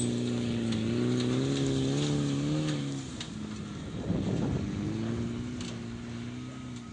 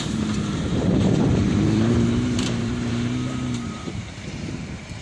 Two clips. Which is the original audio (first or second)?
first